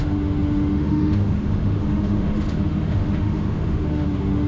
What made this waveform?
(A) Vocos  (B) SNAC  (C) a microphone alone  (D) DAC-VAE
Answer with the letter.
D